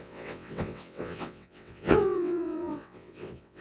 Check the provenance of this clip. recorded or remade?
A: remade